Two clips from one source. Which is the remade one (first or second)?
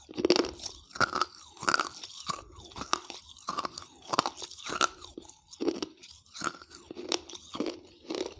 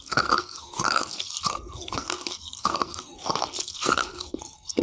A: second